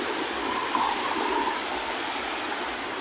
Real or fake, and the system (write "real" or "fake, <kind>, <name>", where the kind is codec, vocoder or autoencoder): real